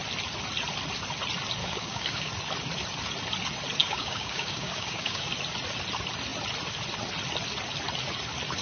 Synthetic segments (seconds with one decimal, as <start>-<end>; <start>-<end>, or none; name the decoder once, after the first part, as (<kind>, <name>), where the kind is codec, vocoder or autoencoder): 1.6-2.3 (codec, DAC); 3.8-5.3

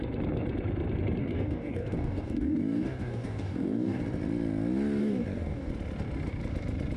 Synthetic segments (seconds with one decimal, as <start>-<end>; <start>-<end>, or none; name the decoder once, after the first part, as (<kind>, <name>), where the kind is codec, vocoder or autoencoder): 1.2-4.0 (codec, DAC); 5.0-5.7

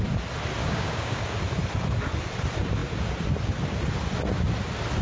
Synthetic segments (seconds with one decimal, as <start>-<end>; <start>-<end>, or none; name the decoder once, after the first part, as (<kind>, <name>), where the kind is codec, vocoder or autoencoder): 0.6-1.2 (codec, DAC)

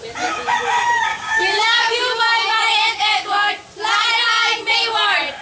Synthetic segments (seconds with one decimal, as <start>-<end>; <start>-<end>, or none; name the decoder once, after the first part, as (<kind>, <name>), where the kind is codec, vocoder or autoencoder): 1.1-3.5 (codec, DAC)

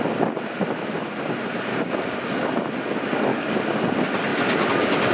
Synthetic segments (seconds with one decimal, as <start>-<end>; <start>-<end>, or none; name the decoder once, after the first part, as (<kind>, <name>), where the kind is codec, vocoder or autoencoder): 1.7-2.5 (codec, DAC); 3.3-3.9

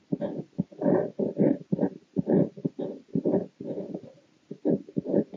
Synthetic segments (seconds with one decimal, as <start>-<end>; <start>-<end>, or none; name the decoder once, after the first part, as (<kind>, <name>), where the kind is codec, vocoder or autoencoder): none

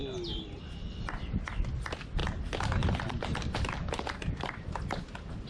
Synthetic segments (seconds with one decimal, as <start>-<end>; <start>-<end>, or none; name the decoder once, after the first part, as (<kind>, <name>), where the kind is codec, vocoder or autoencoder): none